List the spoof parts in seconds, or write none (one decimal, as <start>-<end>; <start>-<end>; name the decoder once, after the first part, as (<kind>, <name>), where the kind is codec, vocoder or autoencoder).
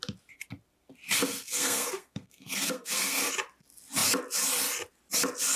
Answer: 1.3-3.3 (codec, SNAC)